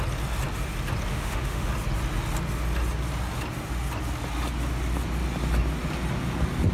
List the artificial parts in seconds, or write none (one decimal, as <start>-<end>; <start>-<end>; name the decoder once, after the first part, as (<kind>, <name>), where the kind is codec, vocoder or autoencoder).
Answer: 1.1-1.7 (autoencoder, DAC-VAE)